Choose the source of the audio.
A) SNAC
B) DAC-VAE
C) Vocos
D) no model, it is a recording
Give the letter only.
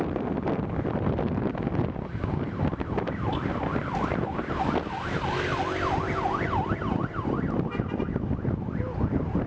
D